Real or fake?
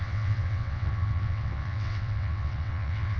fake